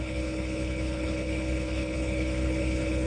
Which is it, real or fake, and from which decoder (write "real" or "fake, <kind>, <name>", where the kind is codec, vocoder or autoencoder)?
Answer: fake, codec, HILCodec